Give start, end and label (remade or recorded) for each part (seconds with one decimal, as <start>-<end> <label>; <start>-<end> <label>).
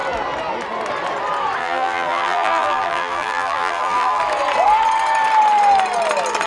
0.0-1.6 recorded; 1.6-4.2 remade; 4.2-6.5 recorded